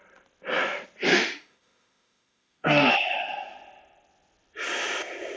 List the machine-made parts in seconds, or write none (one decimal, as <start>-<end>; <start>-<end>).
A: 1.1-2.9